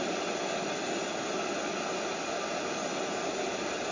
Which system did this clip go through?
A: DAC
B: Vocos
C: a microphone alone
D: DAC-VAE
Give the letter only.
C